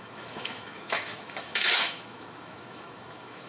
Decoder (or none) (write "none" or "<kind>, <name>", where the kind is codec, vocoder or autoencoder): autoencoder, DAC-VAE